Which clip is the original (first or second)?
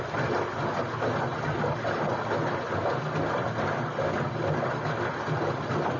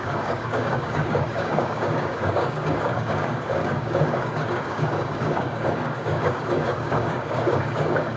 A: first